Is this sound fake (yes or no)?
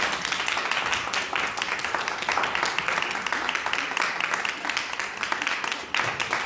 no